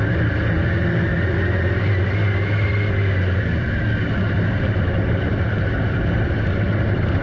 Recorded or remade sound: recorded